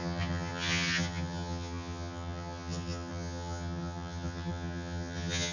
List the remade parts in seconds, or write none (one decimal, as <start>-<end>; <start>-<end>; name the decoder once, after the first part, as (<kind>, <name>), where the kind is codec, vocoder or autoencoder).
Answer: 0.0-5.5 (vocoder, HiFi-GAN)